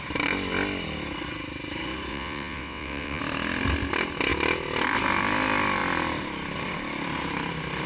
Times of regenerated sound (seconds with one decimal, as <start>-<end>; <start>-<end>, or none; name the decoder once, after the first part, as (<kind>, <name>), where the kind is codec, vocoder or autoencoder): 2.1-3.2 (vocoder, WaveNeXt)